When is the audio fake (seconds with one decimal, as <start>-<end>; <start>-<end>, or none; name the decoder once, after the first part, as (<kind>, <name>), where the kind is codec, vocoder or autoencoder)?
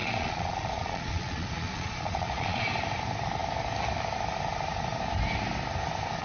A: 0.0-2.6 (vocoder, Vocos)